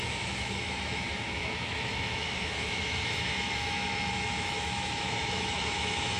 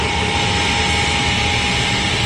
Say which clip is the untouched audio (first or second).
second